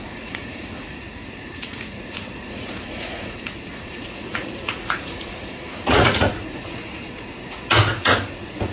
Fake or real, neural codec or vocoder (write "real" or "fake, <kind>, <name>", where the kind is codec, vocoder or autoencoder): fake, vocoder, Vocos